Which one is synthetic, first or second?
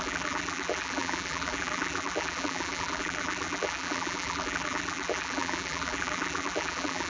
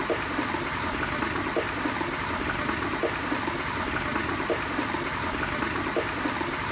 first